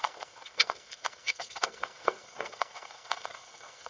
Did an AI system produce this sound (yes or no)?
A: yes